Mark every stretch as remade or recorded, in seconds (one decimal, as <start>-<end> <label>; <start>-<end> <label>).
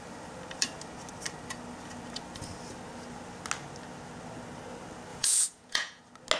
0.0-5.1 recorded; 5.1-6.0 remade; 6.0-6.4 recorded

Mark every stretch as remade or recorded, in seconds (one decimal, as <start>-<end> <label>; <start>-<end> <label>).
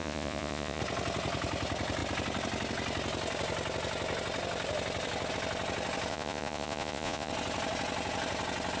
0.0-0.8 remade; 0.8-6.1 recorded; 6.1-7.3 remade; 7.3-8.8 recorded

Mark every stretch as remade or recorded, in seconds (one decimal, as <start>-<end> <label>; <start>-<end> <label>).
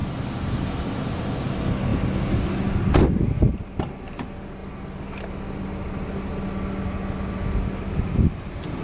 0.0-8.8 recorded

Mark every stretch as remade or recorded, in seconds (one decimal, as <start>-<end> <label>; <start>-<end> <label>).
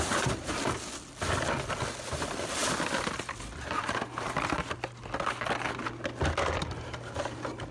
0.0-7.7 recorded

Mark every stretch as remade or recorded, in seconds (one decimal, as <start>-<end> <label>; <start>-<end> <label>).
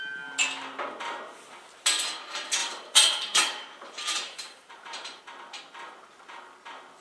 0.0-2.6 recorded; 2.6-5.2 remade; 5.2-7.0 recorded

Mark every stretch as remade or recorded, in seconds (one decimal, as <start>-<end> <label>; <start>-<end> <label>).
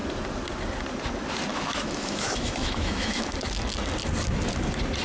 0.0-1.5 recorded; 1.5-3.3 remade; 3.3-5.0 recorded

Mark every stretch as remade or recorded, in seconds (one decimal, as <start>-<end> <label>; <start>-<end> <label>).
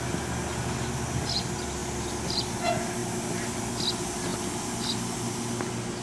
0.0-1.8 recorded; 1.8-2.6 remade; 2.6-6.0 recorded